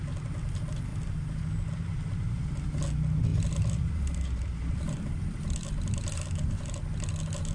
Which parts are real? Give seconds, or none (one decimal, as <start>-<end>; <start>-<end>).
0.0-0.9; 1.7-3.3; 5.0-7.5